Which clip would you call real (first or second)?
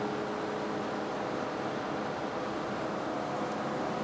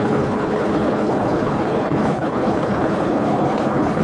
first